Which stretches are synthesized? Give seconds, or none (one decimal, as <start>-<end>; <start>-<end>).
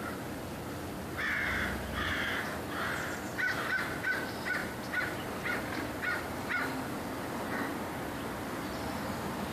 4.6-6.8; 7.7-9.0